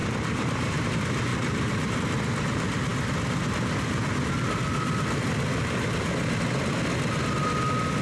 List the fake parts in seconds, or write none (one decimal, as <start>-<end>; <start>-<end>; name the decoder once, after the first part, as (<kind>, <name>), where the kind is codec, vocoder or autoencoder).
0.0-0.9 (vocoder, BigVGAN v2); 1.3-2.0